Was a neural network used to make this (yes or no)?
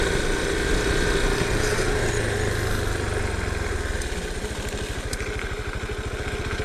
no